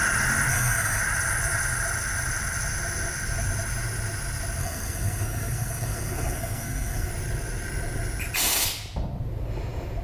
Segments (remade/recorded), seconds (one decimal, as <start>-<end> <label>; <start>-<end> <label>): 0.0-0.5 recorded; 0.5-1.0 remade; 1.0-4.6 recorded; 4.6-7.1 remade; 7.1-10.0 recorded